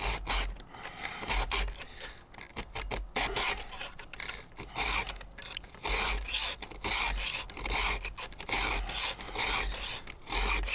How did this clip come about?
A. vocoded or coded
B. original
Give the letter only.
B